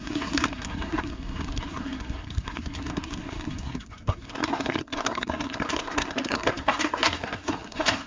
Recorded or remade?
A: remade